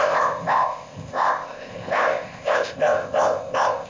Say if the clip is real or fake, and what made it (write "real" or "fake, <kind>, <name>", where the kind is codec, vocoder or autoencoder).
fake, codec, ZipCodec